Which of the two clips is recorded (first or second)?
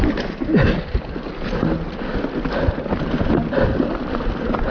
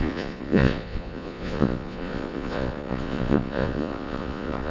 first